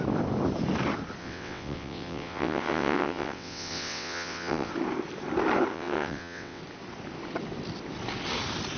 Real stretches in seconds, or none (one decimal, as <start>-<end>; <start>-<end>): 0.0-1.2; 4.7-5.7; 6.6-8.8